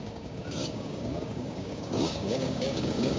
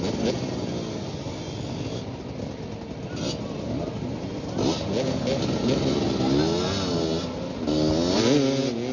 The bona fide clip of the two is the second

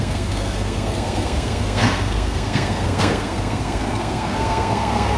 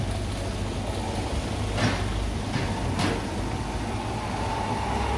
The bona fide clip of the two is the second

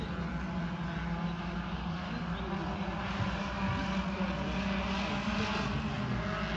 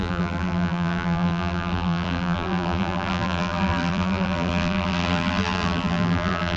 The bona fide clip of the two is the first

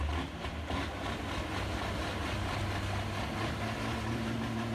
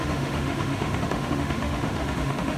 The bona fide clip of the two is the first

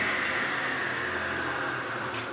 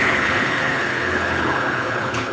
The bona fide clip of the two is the first